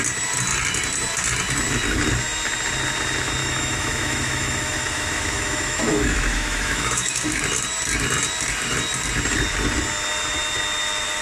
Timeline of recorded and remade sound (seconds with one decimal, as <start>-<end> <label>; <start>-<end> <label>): 0.0-3.4 recorded; 3.4-7.4 remade; 7.4-11.2 recorded